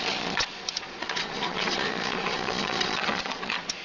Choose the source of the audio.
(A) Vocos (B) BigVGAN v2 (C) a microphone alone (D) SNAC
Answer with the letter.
A